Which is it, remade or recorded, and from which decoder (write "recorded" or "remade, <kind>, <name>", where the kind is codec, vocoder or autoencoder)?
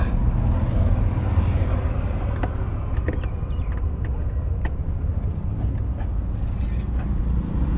recorded